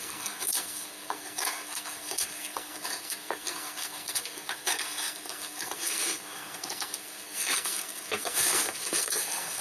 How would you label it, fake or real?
fake